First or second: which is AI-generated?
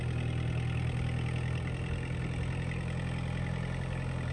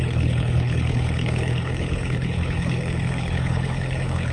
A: second